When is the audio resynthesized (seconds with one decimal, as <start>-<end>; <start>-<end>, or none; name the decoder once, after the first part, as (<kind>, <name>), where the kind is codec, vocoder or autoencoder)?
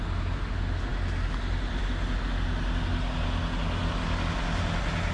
none